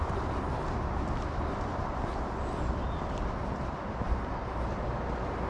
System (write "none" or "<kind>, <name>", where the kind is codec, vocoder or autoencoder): none